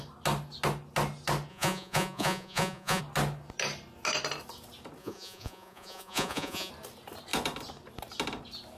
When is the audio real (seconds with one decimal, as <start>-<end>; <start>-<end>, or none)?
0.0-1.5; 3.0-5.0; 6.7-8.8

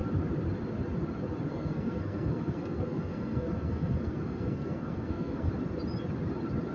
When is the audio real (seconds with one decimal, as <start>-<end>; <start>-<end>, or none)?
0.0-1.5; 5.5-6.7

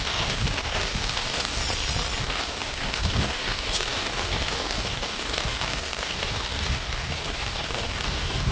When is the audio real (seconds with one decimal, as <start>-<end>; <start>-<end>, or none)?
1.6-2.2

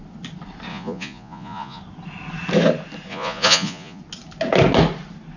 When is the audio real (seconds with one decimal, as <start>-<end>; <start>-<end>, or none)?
0.0-0.7; 1.8-3.1; 4.0-5.4

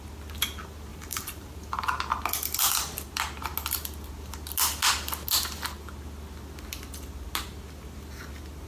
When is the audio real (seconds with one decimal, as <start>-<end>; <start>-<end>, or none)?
0.0-0.9; 1.9-8.7